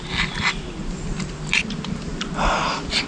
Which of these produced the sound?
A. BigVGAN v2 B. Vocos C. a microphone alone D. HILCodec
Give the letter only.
C